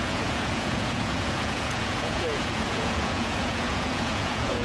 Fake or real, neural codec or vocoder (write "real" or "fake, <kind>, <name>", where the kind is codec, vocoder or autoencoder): fake, vocoder, Vocos